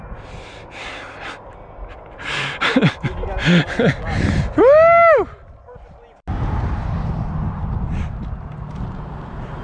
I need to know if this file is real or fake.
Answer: real